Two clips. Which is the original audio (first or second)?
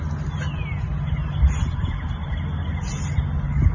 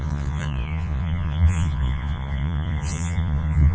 first